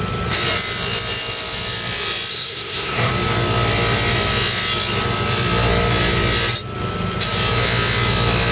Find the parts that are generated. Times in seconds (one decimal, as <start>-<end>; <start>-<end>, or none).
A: 2.3-3.1